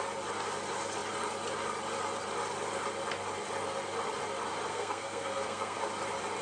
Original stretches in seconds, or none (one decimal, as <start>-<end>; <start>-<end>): 0.0-4.7; 5.9-6.4